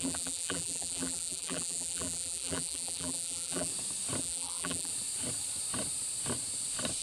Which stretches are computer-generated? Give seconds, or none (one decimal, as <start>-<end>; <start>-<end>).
0.0-3.7; 4.2-4.9

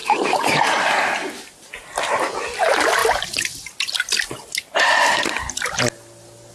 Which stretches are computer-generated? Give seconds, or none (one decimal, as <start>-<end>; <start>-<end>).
0.0-0.5